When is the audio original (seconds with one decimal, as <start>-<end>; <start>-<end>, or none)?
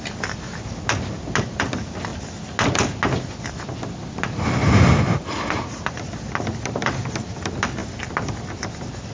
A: 0.0-9.1